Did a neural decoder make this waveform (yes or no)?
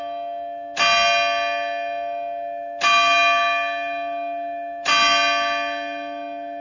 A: no